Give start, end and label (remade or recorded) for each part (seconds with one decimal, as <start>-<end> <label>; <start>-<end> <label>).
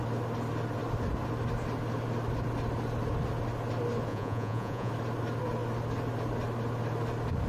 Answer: 0.0-4.1 recorded; 4.1-4.9 remade; 4.9-7.5 recorded